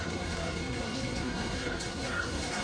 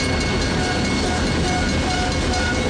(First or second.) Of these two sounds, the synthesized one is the first